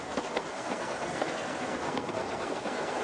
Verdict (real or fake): fake